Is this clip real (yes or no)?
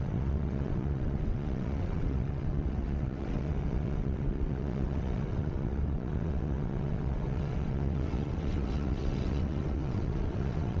no